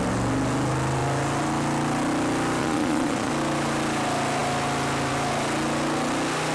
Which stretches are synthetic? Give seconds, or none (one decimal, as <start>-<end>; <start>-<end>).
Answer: 2.6-3.3